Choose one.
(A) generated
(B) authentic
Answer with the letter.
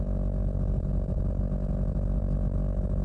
B